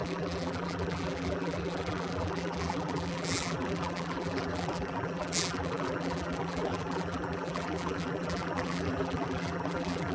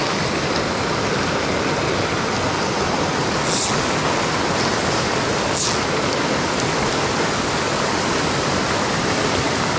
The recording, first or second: second